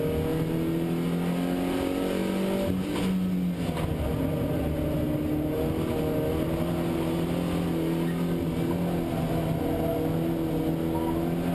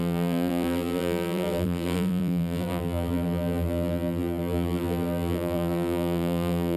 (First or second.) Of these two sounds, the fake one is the second